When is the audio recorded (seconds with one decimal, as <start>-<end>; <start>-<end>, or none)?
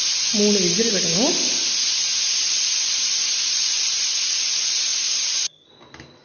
0.0-0.8; 1.3-2.1; 4.2-4.9; 5.7-6.2